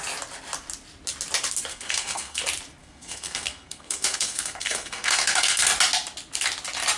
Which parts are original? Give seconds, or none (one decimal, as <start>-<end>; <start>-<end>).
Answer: 0.0-1.7; 2.4-2.8; 5.6-7.0